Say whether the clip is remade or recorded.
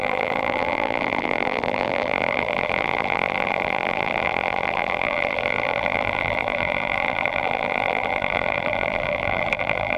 remade